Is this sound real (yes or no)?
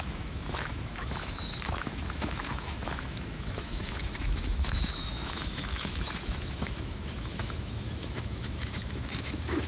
no